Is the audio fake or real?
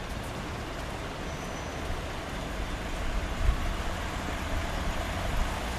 real